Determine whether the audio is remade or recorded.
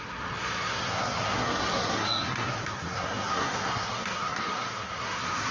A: remade